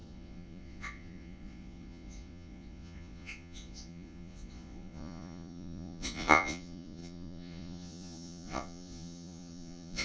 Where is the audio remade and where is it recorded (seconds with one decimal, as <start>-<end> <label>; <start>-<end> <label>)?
0.0-10.0 remade